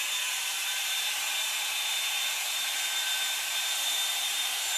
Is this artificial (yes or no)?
yes